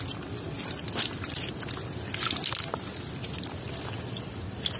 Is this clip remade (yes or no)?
no